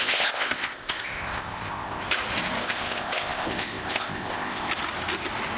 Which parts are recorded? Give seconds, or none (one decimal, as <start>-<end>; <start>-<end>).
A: 2.0-2.6; 4.7-5.6